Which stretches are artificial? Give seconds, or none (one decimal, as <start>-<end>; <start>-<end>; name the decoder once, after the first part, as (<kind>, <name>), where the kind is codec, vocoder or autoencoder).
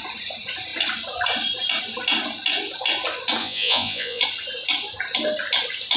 3.4-4.2 (vocoder, Vocos)